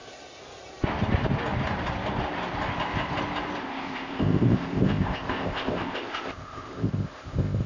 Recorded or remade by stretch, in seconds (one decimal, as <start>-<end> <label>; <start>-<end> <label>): 0.0-3.6 recorded; 3.6-7.7 remade